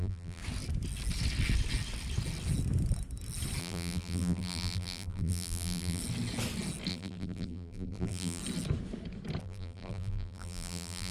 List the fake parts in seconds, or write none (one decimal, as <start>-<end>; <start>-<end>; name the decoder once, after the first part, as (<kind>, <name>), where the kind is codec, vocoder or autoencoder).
0.0-0.4 (vocoder, BigVGAN v2); 3.6-6.0; 6.9-8.4; 9.4-11.1